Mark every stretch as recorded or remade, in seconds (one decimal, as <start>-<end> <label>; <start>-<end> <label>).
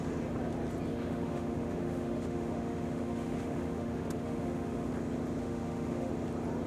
0.0-0.9 recorded; 0.9-4.9 remade; 4.9-5.4 recorded; 5.4-6.1 remade; 6.1-6.7 recorded